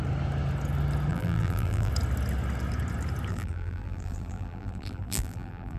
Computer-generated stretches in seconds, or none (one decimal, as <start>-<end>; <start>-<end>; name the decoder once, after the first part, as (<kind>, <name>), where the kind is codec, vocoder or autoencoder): 1.1-1.9 (vocoder, BigVGAN v2); 3.3-5.8